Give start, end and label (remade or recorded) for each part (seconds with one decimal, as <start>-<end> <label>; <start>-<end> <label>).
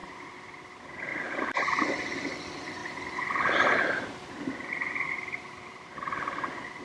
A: 0.0-1.1 recorded; 1.1-1.8 remade; 1.8-2.8 recorded; 2.8-6.8 remade